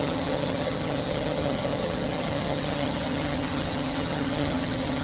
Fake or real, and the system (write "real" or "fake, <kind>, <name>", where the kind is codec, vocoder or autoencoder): fake, vocoder, HiFi-GAN